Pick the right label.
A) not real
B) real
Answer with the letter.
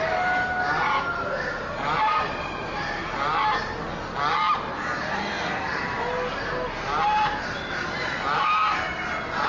B